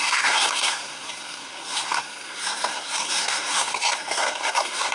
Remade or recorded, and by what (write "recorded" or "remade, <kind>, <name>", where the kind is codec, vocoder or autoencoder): remade, codec, SNAC